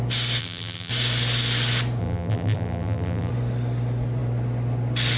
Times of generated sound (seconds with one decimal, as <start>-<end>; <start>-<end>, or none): 0.4-0.9; 2.0-3.3